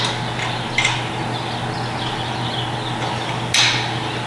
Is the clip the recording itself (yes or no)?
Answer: yes